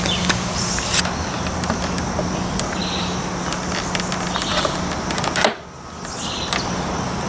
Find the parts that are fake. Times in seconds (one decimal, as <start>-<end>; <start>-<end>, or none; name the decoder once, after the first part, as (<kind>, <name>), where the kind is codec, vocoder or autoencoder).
none